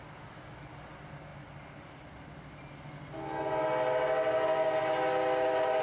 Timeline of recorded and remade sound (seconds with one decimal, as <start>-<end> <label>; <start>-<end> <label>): 0.0-5.8 recorded